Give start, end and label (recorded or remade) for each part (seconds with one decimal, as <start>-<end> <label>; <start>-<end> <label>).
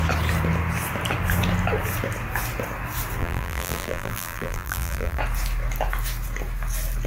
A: 0.0-3.2 recorded; 3.2-5.2 remade; 5.2-7.1 recorded